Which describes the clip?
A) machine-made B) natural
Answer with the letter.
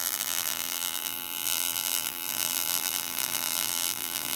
A